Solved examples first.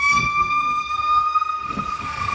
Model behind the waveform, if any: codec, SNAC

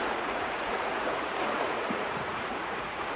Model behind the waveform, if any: vocoder, Vocos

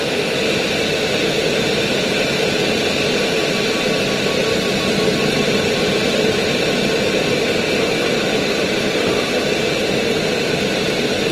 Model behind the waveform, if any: none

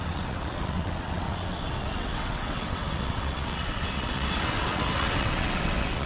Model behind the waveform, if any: vocoder, WaveNeXt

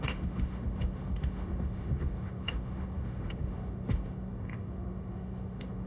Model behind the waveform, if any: autoencoder, DAC-VAE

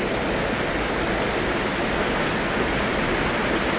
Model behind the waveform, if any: none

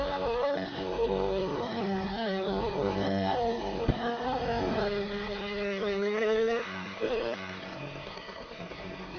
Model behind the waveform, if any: codec, SNAC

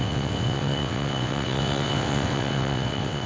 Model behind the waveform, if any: vocoder, WaveNeXt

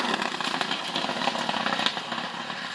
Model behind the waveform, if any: none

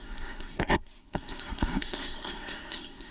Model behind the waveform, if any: codec, SNAC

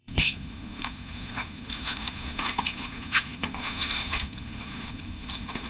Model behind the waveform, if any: codec, SNAC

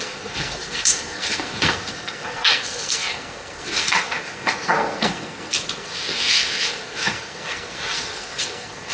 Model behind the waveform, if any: codec, SNAC